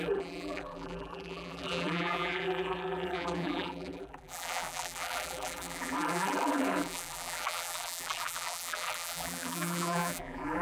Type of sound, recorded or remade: remade